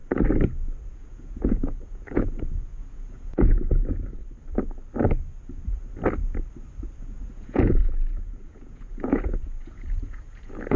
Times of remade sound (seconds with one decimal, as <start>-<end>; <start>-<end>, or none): 0.9-4.2; 7.0-10.8